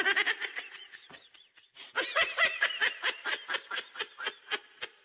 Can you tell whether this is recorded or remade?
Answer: recorded